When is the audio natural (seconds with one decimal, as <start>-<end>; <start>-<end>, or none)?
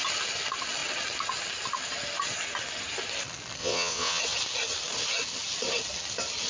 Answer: 0.0-3.6; 4.2-6.5